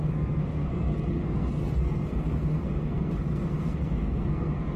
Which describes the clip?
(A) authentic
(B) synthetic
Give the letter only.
B